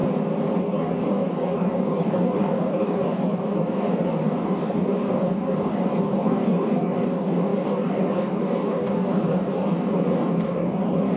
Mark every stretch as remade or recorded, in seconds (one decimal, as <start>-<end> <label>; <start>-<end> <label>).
0.0-0.6 recorded; 0.6-11.2 remade